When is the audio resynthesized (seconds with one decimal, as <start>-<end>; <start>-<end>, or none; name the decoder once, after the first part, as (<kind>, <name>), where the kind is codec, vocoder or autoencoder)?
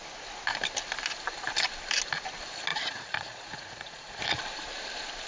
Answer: 2.7-4.2 (vocoder, Vocos)